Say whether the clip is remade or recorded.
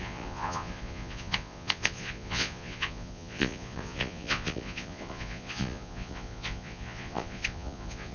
remade